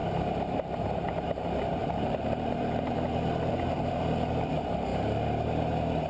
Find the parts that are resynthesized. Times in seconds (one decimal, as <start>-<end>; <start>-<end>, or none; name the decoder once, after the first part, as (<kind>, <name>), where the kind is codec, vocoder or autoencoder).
1.8-4.5 (vocoder, BigVGAN v2)